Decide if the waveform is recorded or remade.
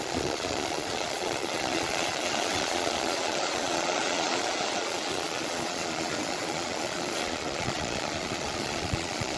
remade